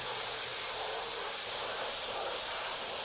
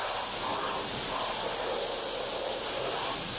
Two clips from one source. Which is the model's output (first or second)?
first